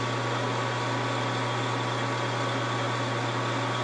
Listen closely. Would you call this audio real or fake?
real